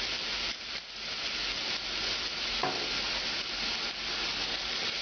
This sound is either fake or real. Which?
real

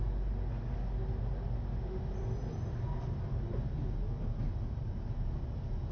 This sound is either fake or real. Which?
real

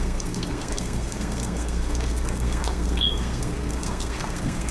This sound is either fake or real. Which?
fake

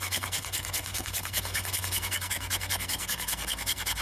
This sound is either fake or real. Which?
fake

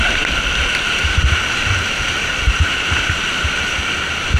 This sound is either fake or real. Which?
real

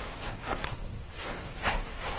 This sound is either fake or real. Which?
fake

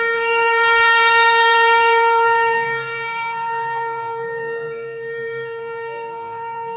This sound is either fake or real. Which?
fake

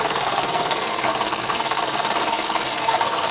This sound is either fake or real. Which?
fake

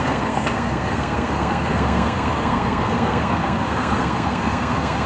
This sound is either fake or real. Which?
fake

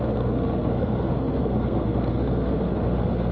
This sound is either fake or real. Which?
fake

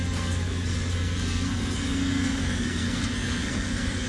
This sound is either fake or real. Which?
fake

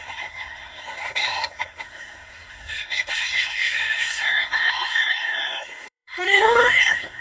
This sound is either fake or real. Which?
fake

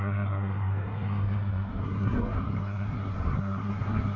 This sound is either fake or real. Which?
fake